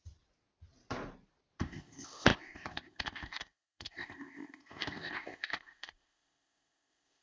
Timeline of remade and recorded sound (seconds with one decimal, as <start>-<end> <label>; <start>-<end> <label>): 0.0-1.6 recorded; 1.6-7.2 remade